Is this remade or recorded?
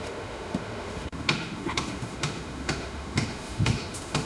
remade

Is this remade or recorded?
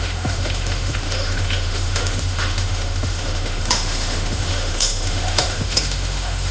remade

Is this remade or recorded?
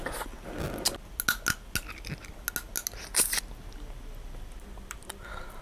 recorded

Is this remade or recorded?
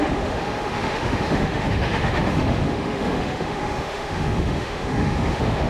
remade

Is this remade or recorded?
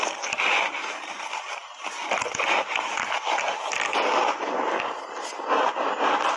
recorded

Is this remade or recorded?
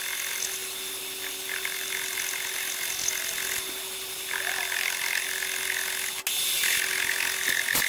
recorded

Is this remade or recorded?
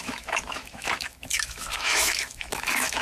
remade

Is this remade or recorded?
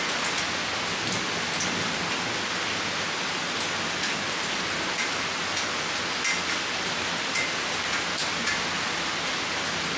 recorded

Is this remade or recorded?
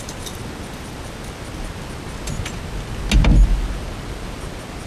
recorded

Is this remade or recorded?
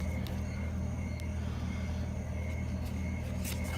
recorded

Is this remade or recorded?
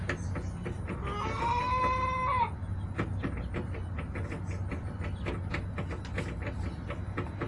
recorded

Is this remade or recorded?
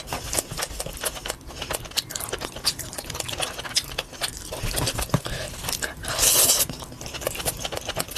recorded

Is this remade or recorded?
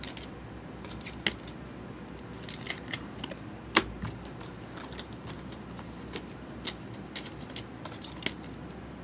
recorded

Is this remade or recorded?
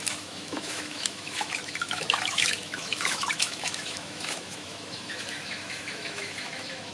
remade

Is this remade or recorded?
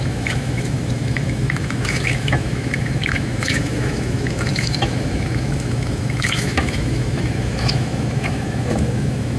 remade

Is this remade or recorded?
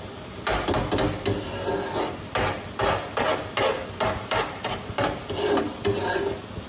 recorded